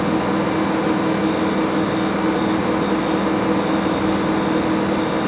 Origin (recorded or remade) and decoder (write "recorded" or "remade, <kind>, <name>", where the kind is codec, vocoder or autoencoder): recorded